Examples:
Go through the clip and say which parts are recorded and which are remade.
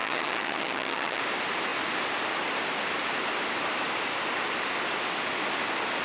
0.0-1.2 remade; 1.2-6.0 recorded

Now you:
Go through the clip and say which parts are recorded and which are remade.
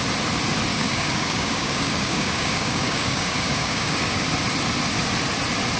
0.0-0.7 recorded; 0.7-4.2 remade; 4.2-5.8 recorded